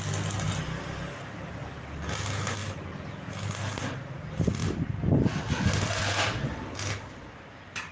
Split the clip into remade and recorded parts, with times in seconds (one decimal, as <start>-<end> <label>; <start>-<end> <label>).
0.0-7.9 recorded